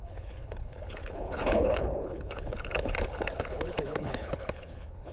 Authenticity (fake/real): fake